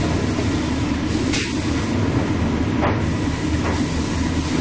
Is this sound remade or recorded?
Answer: recorded